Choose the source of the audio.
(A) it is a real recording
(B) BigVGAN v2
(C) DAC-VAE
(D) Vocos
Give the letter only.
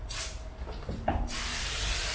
B